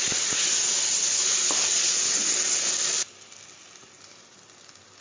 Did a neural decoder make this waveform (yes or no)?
no